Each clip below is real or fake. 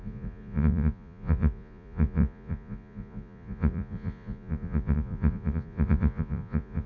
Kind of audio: fake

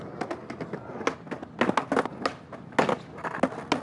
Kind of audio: real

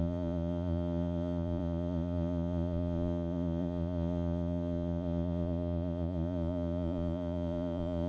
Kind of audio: fake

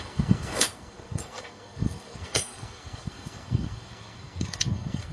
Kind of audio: fake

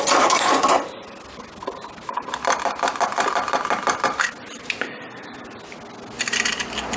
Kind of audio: real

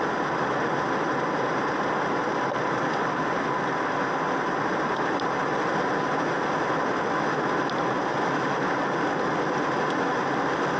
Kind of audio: real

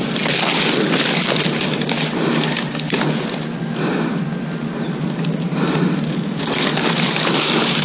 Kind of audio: real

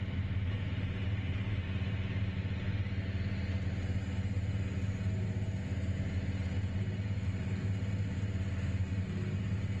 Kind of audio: real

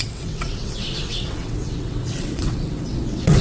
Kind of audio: fake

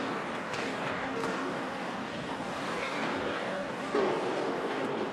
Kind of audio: fake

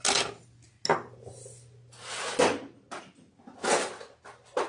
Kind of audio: real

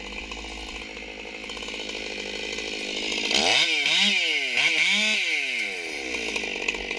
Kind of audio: real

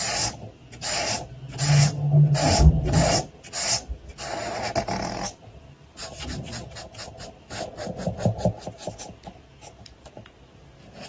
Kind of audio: real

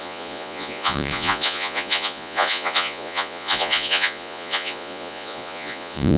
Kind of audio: fake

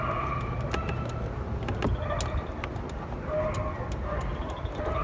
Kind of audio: real